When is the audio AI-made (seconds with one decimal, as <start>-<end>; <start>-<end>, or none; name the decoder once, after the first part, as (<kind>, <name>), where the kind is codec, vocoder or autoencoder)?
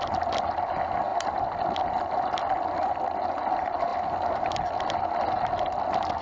none